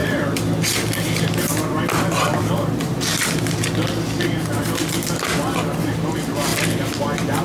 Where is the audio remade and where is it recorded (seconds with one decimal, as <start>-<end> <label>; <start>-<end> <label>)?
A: 0.0-6.5 remade; 6.5-7.4 recorded